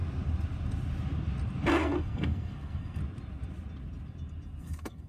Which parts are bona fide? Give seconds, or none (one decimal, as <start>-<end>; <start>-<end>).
0.0-1.7; 3.0-4.6